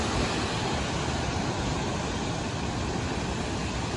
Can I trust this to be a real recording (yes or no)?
yes